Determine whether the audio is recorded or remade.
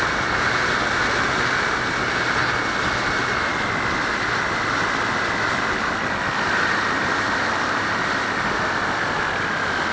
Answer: recorded